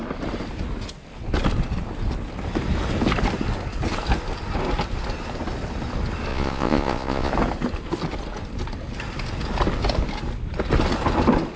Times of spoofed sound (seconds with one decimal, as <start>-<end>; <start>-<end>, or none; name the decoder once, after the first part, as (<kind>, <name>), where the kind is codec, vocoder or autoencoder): 6.3-7.3 (vocoder, Vocos)